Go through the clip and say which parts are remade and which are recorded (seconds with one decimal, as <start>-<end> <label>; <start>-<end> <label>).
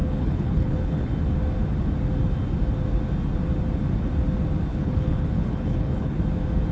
0.0-1.1 remade; 1.1-4.7 recorded; 4.7-6.2 remade; 6.2-6.7 recorded